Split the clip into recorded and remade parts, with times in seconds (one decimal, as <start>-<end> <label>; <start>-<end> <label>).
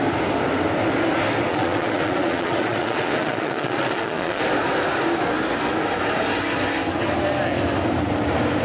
0.0-1.5 recorded; 1.5-4.4 remade; 4.4-8.6 recorded